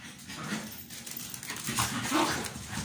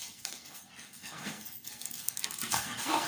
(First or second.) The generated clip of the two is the second